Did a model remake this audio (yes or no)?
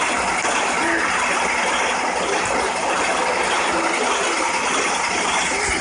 no